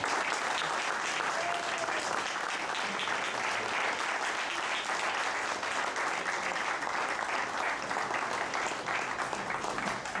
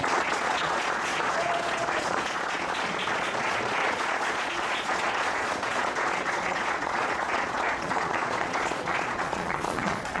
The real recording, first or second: first